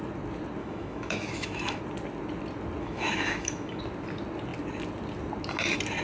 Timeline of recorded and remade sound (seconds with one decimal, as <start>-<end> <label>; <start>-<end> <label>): 0.0-0.6 recorded; 0.6-1.8 remade; 1.8-2.8 recorded; 2.8-3.8 remade; 3.8-6.0 recorded